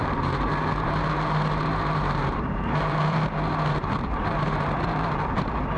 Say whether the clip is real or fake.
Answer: fake